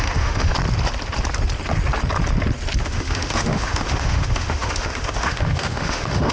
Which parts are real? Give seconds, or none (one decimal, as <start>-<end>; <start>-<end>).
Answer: 0.5-2.8